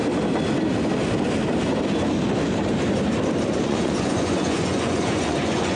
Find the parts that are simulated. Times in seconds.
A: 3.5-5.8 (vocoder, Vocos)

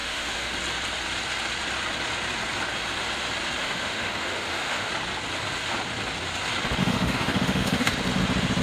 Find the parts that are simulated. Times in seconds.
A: 0.0-0.5 (autoencoder, DAC-VAE); 3.6-4.9; 6.8-7.9